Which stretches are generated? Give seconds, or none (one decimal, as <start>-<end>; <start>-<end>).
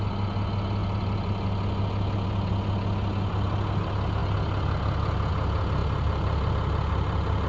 none